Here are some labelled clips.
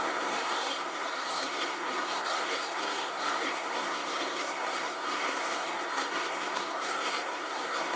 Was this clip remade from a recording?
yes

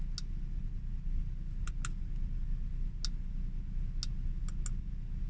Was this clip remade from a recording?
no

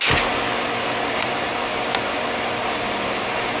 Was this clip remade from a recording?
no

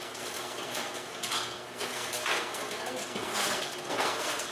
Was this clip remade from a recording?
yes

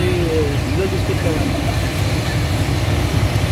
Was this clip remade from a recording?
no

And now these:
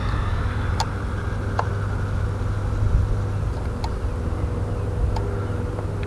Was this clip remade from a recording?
no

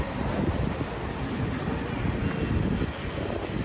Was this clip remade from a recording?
no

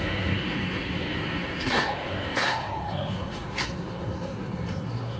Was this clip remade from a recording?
yes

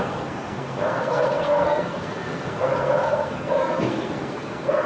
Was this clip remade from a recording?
yes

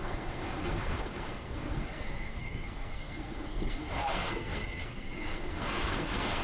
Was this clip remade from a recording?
yes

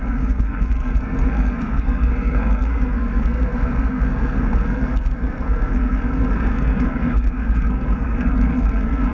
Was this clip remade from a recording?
yes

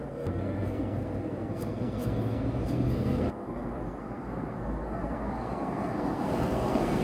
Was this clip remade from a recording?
yes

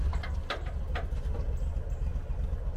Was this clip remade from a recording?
no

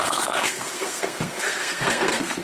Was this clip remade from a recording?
yes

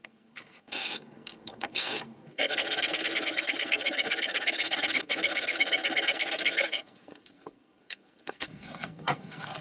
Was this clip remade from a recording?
yes